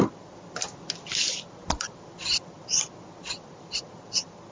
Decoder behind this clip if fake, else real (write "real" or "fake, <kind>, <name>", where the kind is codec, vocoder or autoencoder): real